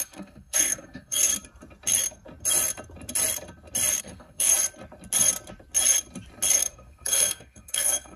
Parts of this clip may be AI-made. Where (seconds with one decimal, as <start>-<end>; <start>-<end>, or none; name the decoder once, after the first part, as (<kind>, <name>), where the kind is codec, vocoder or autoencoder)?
0.0-1.3 (codec, SNAC); 4.0-4.5; 6.5-8.2